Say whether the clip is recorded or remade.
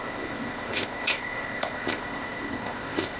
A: remade